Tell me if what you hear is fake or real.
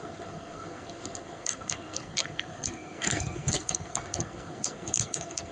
fake